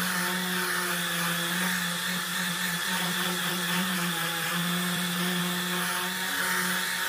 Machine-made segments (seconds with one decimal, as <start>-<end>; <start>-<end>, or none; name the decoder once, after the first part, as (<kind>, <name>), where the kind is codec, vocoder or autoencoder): 2.3-5.4 (vocoder, BigVGAN v2)